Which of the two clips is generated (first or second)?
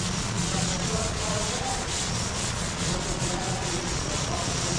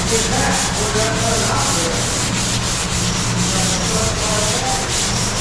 first